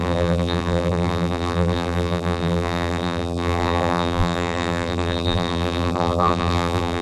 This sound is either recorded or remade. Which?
remade